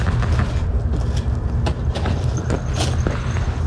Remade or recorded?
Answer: recorded